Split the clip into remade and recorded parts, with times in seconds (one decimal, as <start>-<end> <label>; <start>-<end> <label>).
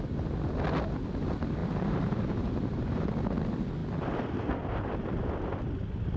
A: 0.0-1.6 recorded; 1.6-3.1 remade; 3.1-6.2 recorded